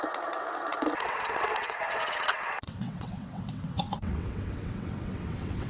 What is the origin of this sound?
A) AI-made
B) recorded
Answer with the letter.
A